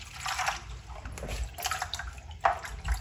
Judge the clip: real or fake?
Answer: real